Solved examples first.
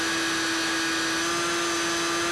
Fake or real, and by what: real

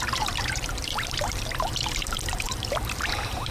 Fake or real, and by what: fake, vocoder, BigVGAN v2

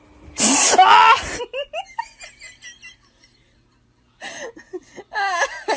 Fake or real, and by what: real